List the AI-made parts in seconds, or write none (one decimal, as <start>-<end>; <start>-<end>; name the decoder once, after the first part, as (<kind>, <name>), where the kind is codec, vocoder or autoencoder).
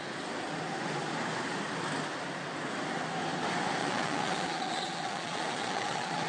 3.8-6.3 (vocoder, Vocos)